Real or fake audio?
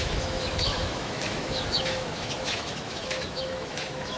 fake